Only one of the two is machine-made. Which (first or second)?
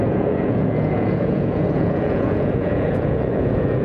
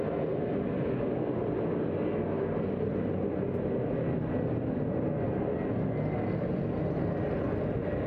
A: first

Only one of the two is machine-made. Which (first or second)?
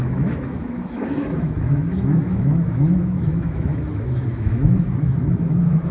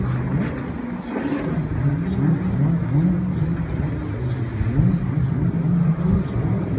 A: first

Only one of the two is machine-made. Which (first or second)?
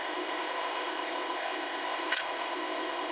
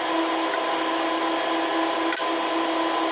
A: first